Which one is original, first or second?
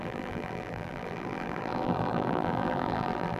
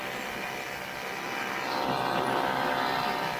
second